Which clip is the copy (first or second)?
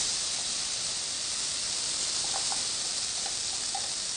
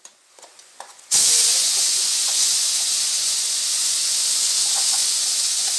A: second